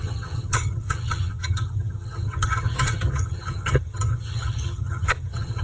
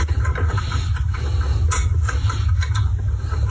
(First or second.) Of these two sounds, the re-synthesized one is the first